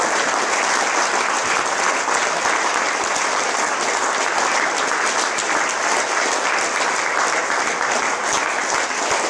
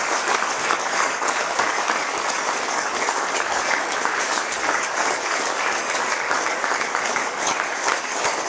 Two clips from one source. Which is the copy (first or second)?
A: second